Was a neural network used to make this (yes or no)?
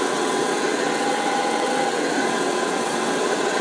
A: yes